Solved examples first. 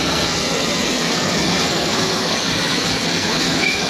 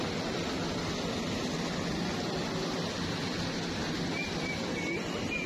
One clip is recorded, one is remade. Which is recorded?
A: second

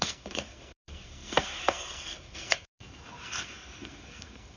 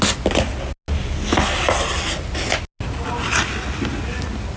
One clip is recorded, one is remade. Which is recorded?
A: second